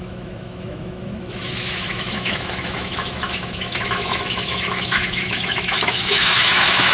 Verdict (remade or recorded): remade